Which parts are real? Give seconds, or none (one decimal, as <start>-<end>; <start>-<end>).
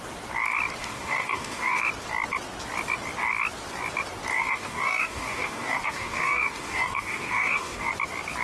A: 0.0-0.8; 1.8-4.3; 7.9-8.4